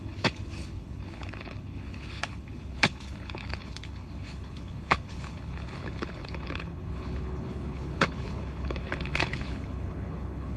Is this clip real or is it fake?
fake